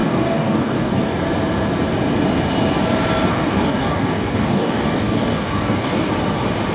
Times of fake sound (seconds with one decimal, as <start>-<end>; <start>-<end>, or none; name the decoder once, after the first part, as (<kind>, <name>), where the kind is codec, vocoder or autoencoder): 0.0-1.0 (codec, DAC); 3.3-6.1